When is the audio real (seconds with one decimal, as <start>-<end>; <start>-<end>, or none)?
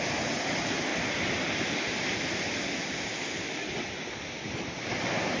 0.0-5.4